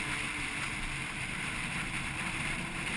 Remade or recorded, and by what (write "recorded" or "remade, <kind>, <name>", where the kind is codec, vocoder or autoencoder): remade, vocoder, BigVGAN v2